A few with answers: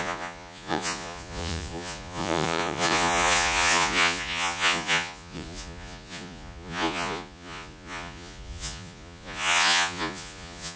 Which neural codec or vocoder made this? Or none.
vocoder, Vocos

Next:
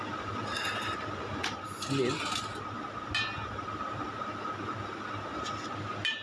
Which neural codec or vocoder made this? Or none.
none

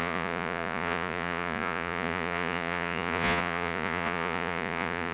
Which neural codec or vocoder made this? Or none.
vocoder, Vocos